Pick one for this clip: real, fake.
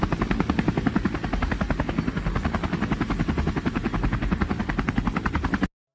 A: real